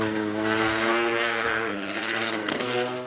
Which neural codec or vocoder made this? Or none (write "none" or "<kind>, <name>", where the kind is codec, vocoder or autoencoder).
codec, SNAC